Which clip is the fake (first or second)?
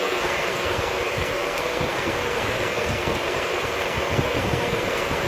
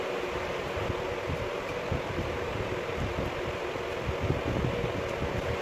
first